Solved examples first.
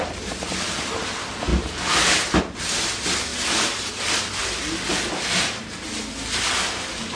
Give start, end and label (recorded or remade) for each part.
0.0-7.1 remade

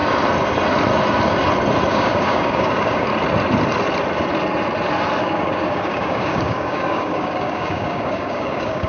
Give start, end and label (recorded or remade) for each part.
0.0-1.9 recorded; 1.9-3.1 remade; 3.1-5.2 recorded; 5.2-8.9 remade

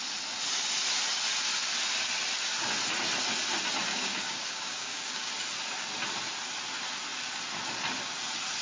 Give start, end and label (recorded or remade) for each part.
0.0-3.9 recorded; 3.9-5.3 remade; 5.3-8.6 recorded